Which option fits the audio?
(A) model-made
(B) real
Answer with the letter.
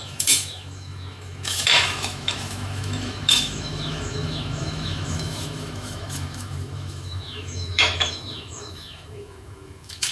A